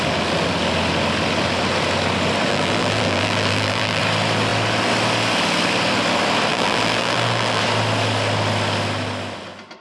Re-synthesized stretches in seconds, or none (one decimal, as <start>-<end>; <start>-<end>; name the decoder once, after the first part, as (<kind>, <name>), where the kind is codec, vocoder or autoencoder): 2.5-4.0 (vocoder, BigVGAN v2); 6.5-7.6